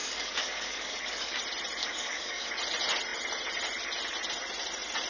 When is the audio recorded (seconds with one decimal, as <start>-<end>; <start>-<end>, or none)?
1.4-1.8; 2.5-5.1